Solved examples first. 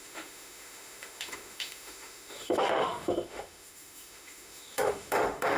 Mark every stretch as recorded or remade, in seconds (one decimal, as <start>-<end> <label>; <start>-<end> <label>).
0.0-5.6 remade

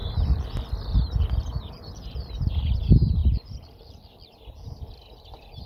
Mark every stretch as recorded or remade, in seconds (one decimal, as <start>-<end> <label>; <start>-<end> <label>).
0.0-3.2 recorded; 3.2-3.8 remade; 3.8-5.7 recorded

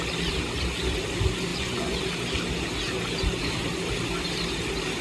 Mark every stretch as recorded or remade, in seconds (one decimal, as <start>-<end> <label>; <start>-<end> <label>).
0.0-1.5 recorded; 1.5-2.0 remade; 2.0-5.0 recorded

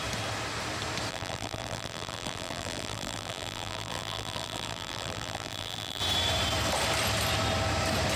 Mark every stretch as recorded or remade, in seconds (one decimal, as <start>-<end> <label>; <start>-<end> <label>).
0.0-1.1 recorded; 1.1-6.0 remade; 6.0-8.2 recorded

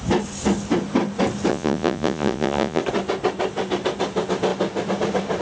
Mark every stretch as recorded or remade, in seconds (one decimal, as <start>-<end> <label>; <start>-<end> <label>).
0.0-1.5 recorded; 1.5-2.8 remade; 2.8-5.4 recorded

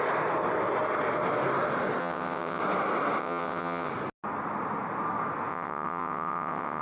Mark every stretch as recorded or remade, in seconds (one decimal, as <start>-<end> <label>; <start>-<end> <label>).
0.0-2.0 recorded; 2.0-2.6 remade; 2.6-3.2 recorded; 3.2-3.9 remade; 3.9-5.5 recorded; 5.5-6.8 remade

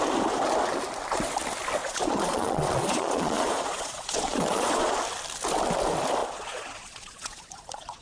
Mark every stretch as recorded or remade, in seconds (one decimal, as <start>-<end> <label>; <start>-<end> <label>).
0.0-1.8 recorded; 1.8-5.0 remade; 5.0-6.2 recorded; 6.2-8.0 remade